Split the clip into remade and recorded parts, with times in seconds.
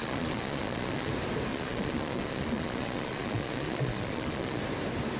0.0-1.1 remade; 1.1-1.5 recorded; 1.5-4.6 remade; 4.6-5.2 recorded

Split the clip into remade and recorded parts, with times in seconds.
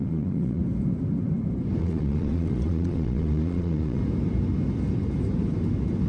0.0-0.6 remade; 0.6-1.8 recorded; 1.8-4.0 remade; 4.0-6.1 recorded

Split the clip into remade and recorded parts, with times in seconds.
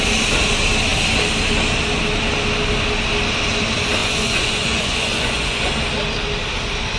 0.0-4.0 recorded; 4.0-5.7 remade; 5.7-7.0 recorded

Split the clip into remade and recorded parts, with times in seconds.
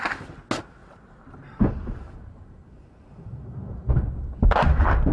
0.0-0.8 recorded; 0.8-3.9 remade; 3.9-5.1 recorded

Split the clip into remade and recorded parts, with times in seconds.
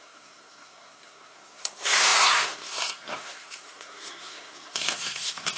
0.0-5.6 remade